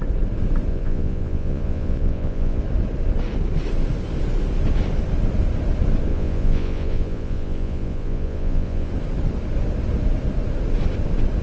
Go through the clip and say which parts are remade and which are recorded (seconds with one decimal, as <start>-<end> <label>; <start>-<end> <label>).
0.0-0.7 recorded; 0.7-2.6 remade; 2.6-6.1 recorded; 6.1-8.9 remade; 8.9-11.4 recorded